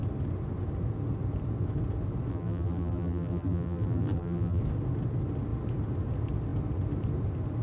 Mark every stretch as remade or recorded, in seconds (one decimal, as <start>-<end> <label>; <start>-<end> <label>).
0.0-2.3 recorded; 2.3-4.6 remade; 4.6-7.6 recorded